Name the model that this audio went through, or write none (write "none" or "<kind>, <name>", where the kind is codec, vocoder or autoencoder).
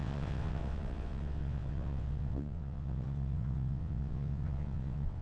vocoder, WaveNeXt